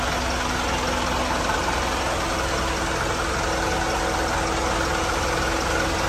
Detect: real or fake real